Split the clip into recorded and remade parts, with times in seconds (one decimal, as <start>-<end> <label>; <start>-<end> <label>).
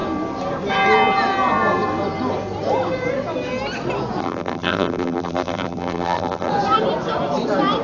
0.0-4.2 recorded; 4.2-6.5 remade; 6.5-7.8 recorded